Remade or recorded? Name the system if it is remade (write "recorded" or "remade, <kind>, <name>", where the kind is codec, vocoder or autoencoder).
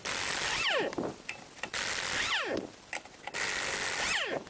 recorded